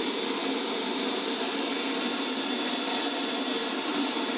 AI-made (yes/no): no